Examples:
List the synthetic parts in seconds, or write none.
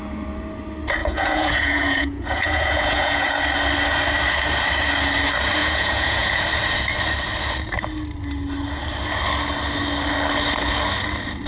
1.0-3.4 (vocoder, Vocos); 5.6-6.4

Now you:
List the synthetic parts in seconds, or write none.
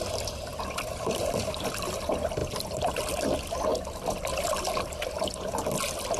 none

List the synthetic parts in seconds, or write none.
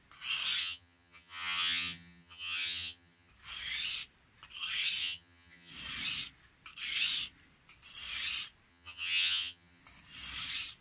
0.6-3.3 (vocoder, HiFi-GAN); 5.0-5.7; 8.7-9.8